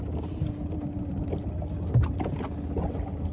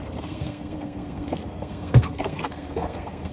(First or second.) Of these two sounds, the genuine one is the first